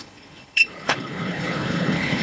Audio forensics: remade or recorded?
remade